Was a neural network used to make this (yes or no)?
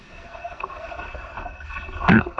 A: yes